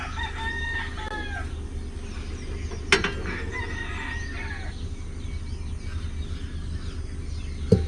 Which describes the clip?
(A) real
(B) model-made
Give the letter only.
A